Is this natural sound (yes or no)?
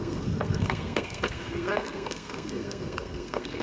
no